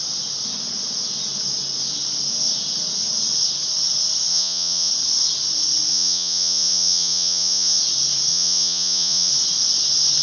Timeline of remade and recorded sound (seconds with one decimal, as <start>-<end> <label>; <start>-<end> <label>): 0.0-4.3 recorded; 4.3-4.9 remade; 4.9-5.9 recorded; 5.9-7.8 remade; 7.8-8.3 recorded; 8.3-9.3 remade; 9.3-10.2 recorded